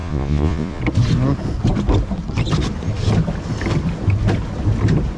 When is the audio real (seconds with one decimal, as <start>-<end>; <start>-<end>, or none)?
0.8-5.2